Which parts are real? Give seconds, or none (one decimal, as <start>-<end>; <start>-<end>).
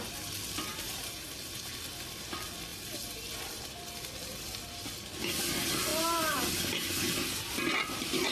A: 0.0-0.7; 1.3-2.7; 3.8-8.3